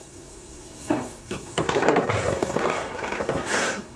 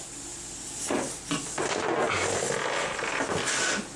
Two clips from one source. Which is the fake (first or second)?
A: first